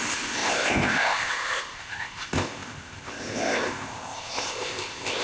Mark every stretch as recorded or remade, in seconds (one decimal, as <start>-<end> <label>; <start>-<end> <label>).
0.0-5.2 remade